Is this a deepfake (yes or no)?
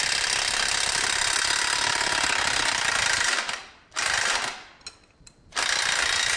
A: no